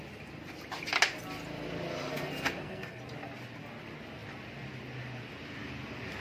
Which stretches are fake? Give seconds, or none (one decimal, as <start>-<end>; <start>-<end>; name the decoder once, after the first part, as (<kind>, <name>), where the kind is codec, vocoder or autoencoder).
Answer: 2.1-3.0 (codec, SNAC)